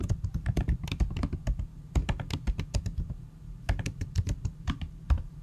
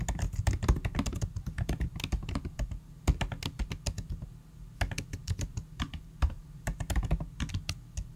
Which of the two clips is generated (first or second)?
first